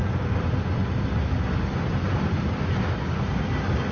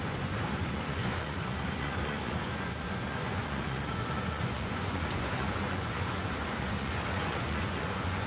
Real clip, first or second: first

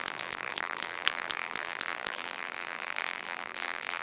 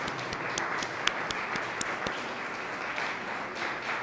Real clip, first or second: second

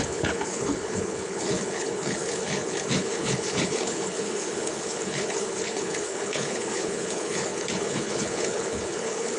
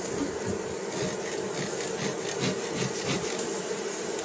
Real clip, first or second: second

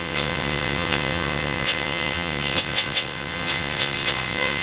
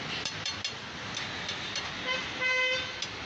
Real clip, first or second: second